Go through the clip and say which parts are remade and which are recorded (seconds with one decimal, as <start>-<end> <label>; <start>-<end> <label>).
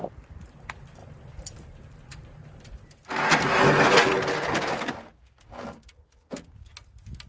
0.0-7.3 recorded